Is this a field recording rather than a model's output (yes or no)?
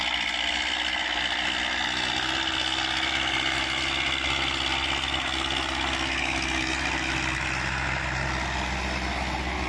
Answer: yes